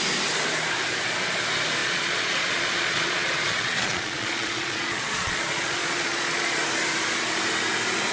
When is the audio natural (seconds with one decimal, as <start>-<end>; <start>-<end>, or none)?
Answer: 0.0-1.8; 6.6-8.1